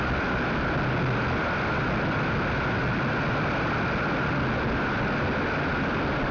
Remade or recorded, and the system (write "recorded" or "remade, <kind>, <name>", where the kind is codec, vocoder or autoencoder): recorded